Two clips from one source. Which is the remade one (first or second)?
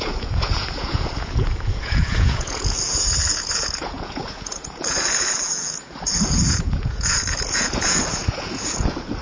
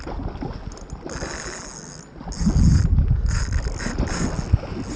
first